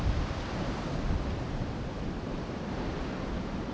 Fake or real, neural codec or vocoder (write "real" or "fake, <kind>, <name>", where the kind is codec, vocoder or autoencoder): fake, vocoder, BigVGAN v2